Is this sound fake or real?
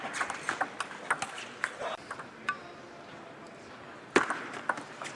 real